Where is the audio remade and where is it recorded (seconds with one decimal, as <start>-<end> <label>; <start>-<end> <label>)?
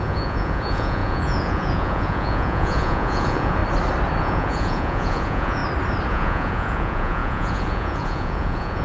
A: 0.0-3.6 remade; 3.6-4.2 recorded; 4.2-5.6 remade; 5.6-6.1 recorded; 6.1-8.8 remade